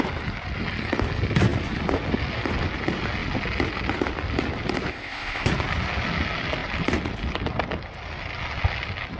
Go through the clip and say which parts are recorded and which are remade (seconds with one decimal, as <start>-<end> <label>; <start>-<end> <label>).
0.0-4.9 recorded; 4.9-5.5 remade; 5.5-9.2 recorded